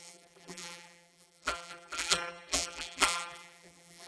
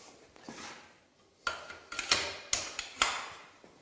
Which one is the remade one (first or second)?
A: first